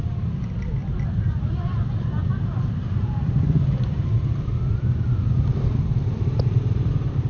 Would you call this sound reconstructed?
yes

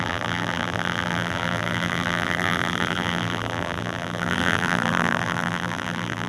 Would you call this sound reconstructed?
yes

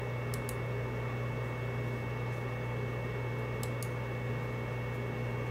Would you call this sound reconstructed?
no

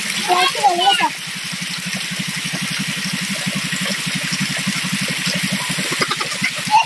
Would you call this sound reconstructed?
no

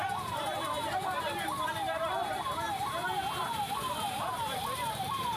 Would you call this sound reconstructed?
yes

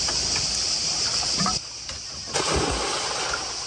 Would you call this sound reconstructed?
no